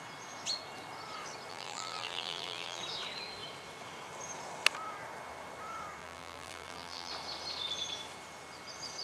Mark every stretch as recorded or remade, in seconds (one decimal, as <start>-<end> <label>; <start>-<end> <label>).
0.0-1.5 recorded; 1.5-2.8 remade; 2.8-6.0 recorded; 6.0-7.1 remade; 7.1-9.0 recorded